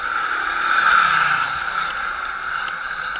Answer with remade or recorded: recorded